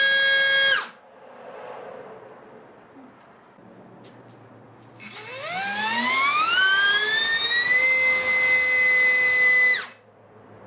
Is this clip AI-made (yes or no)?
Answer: no